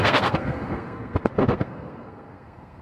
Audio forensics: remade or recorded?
remade